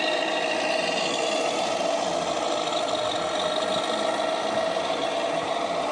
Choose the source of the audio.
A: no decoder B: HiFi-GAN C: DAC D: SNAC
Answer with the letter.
A